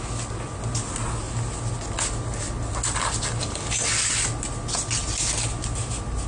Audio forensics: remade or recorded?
recorded